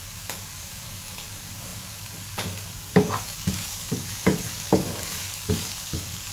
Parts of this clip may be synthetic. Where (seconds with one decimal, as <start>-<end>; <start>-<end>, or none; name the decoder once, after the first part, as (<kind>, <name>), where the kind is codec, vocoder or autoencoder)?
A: 0.0-6.3 (codec, DAC)